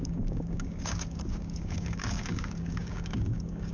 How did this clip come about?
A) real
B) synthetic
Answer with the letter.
B